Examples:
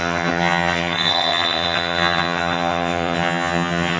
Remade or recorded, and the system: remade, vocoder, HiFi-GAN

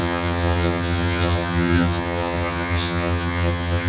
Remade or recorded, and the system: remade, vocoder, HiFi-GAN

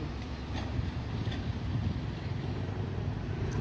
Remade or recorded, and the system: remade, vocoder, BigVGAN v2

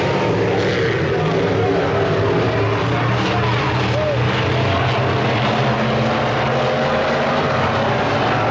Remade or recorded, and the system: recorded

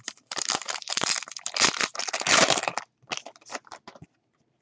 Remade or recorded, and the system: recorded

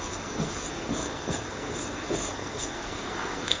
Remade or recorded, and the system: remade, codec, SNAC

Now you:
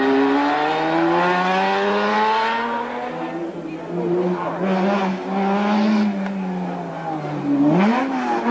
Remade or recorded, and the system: recorded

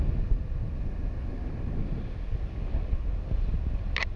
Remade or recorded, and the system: recorded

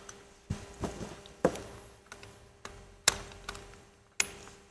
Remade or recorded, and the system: recorded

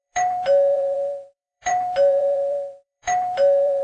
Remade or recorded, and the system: remade, vocoder, BigVGAN v2